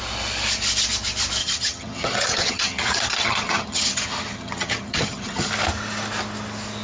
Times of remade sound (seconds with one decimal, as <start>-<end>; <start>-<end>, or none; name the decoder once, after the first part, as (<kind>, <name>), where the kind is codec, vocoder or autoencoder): 1.4-5.5 (vocoder, HiFi-GAN)